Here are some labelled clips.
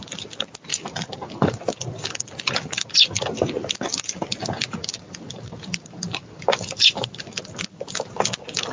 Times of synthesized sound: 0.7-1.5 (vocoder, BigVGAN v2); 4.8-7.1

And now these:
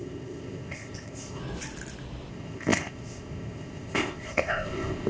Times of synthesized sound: 0.0-1.4 (codec, ZipCodec); 2.3-5.1

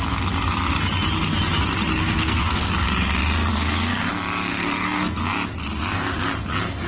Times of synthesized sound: 2.0-2.7 (codec, SNAC); 3.5-4.1; 4.5-5.2

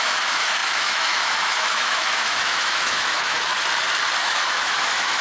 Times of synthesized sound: 0.0-3.5 (autoencoder, DAC-VAE); 4.2-5.2

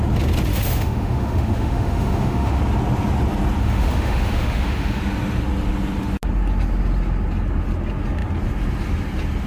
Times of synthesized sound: 0.5-2.6 (autoencoder, DAC-VAE); 3.6-5.0